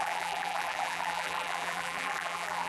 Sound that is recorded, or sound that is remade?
remade